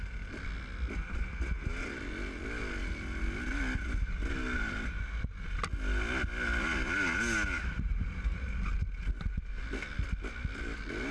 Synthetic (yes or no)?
no